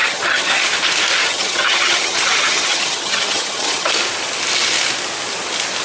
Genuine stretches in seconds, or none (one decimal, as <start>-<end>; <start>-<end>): 0.6-1.2; 3.9-5.8